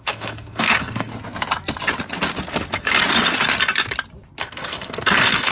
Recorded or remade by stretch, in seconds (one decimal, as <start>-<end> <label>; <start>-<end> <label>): 0.0-1.1 remade; 1.1-4.4 recorded; 4.4-5.5 remade